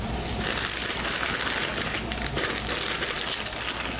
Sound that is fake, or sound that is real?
real